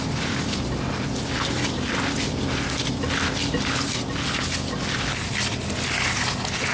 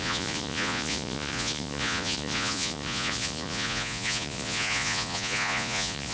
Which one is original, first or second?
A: first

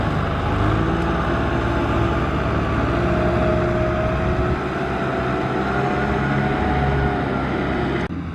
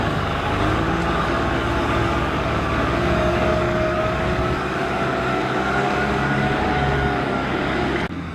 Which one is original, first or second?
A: first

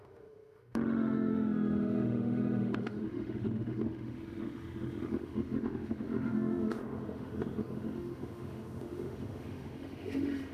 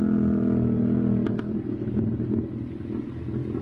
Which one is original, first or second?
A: second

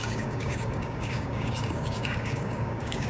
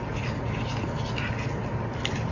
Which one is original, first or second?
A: second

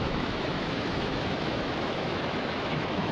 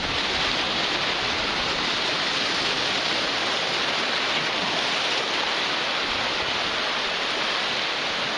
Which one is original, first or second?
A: second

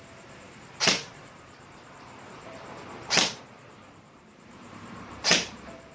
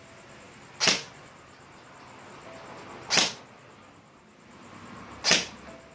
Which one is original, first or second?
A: second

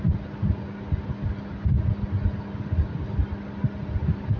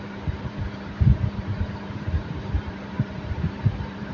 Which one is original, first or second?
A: first